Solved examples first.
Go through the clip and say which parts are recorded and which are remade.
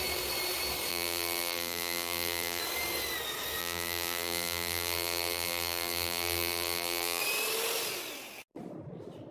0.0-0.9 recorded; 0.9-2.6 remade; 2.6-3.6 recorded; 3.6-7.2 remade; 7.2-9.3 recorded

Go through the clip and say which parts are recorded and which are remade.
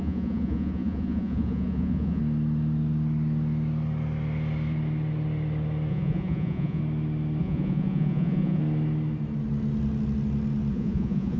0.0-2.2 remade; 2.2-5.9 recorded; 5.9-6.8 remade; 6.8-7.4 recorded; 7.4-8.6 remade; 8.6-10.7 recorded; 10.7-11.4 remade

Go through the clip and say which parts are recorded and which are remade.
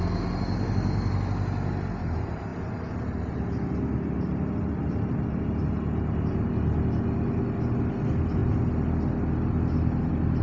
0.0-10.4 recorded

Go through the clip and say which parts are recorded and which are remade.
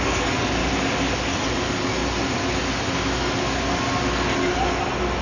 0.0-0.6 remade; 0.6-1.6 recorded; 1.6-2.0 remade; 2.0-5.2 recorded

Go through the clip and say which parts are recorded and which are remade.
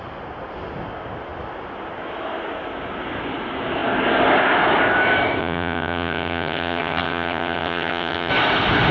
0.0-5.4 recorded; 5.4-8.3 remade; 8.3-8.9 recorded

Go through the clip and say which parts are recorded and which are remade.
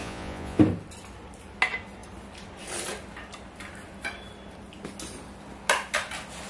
0.0-0.6 remade; 0.6-6.5 recorded